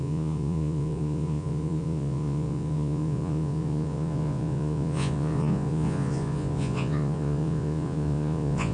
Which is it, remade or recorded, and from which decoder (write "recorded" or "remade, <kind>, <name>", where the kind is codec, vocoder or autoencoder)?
remade, vocoder, Vocos